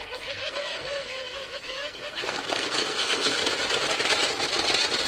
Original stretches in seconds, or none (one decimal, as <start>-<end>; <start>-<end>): 3.4-5.1